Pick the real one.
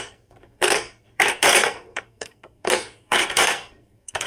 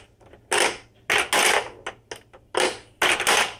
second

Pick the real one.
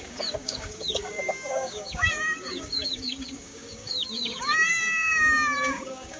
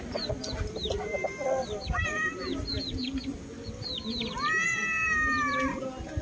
second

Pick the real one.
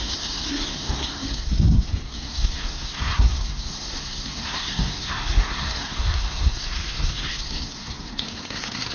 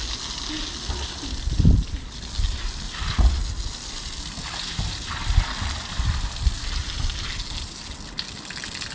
second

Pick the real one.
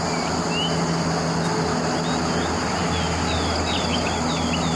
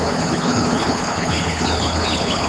first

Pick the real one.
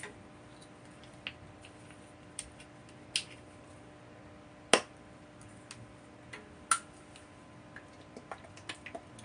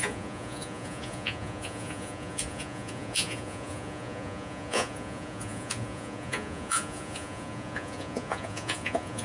first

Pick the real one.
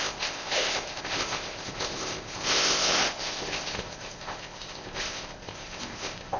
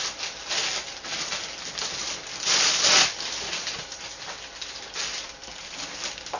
second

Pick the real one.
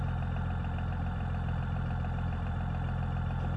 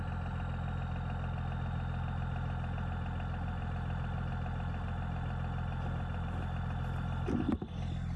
second